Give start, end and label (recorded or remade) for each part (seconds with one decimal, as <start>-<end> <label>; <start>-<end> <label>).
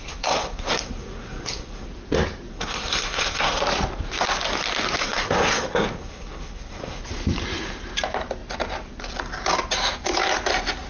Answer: 0.0-1.9 remade; 1.9-2.5 recorded; 2.5-3.6 remade; 3.6-5.0 recorded; 5.0-7.0 remade; 7.0-10.9 recorded